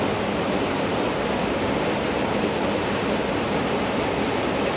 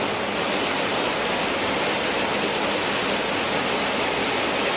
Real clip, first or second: second